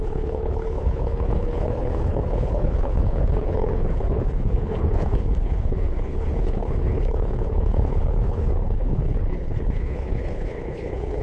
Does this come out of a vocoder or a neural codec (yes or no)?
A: yes